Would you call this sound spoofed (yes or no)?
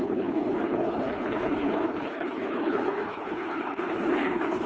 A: yes